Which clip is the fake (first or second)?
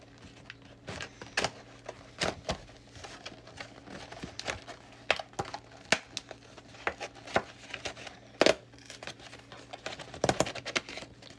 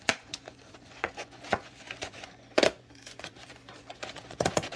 second